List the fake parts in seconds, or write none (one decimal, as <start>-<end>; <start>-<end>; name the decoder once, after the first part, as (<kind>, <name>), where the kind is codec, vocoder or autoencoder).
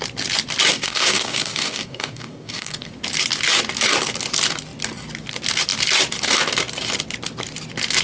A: 0.7-2.9 (codec, DAC)